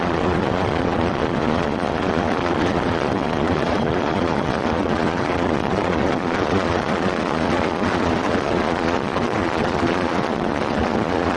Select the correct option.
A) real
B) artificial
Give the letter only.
B